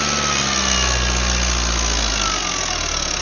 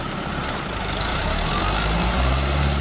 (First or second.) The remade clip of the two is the second